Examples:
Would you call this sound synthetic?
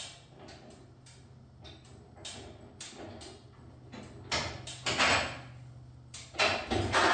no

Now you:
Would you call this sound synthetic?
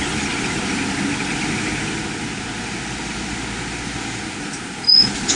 no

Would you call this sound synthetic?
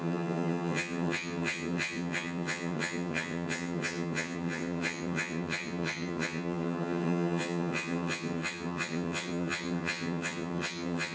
yes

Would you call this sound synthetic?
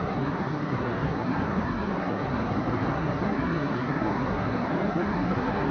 yes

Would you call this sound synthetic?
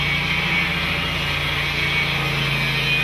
no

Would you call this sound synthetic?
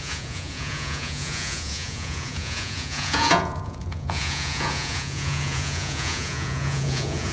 yes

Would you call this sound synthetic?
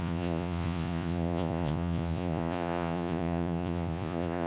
yes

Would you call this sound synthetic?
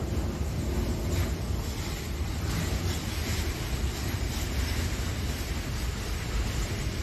no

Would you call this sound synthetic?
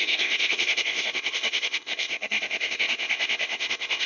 yes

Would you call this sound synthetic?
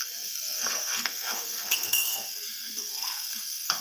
yes